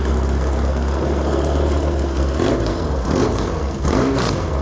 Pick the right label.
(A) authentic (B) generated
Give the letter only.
B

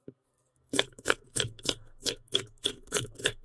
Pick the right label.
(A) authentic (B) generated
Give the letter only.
B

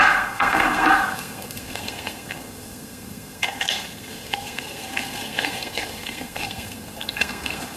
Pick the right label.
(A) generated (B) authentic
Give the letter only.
A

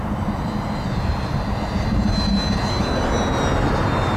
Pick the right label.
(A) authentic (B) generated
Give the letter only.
A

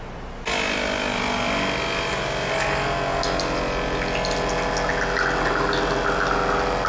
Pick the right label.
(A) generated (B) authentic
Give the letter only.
B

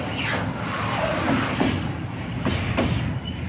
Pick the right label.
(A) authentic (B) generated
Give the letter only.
A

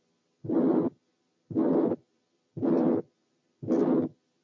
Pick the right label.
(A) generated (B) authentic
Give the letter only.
B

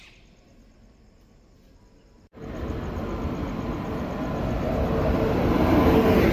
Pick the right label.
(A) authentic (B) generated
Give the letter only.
A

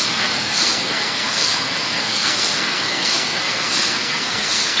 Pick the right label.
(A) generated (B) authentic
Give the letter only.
A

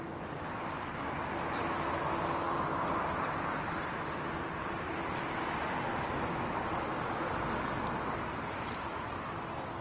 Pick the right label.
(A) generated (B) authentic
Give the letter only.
B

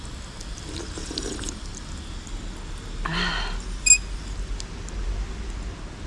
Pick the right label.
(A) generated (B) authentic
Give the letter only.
B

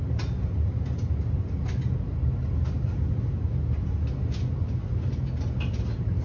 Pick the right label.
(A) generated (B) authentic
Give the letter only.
B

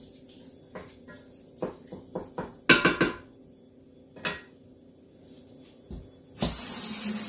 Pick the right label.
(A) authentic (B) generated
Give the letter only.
A